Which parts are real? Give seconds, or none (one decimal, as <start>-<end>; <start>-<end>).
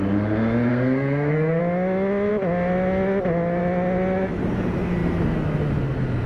0.0-0.7; 1.6-6.3